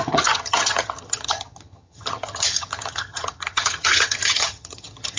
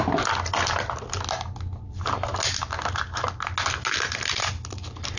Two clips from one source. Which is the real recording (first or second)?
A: second